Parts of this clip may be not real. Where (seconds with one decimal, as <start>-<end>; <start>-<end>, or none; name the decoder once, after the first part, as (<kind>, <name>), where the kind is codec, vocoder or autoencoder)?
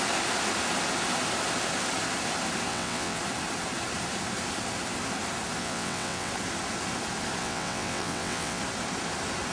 2.7-3.2 (vocoder, WaveNeXt); 5.6-6.3; 7.4-8.6